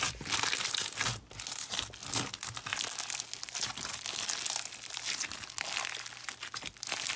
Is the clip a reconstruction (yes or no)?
no